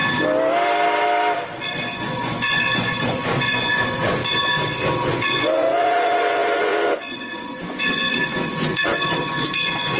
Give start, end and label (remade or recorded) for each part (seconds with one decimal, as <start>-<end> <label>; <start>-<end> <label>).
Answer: 0.0-1.6 recorded; 1.6-4.2 remade; 4.2-4.9 recorded; 4.9-10.0 remade